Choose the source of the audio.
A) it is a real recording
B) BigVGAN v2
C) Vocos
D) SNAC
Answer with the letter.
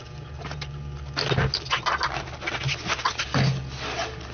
A